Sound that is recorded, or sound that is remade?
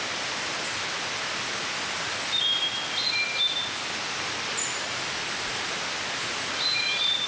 recorded